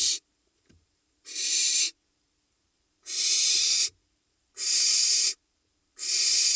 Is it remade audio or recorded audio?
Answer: remade